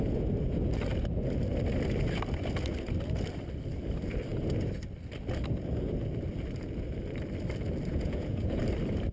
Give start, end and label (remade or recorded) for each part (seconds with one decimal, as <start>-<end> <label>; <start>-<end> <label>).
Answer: 0.0-7.9 recorded; 7.9-8.6 remade; 8.6-9.1 recorded